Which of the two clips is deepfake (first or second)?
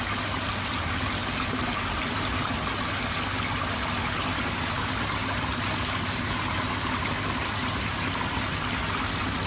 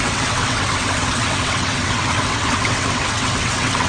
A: second